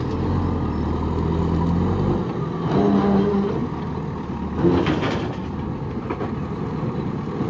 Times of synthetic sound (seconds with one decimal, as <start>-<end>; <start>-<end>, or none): none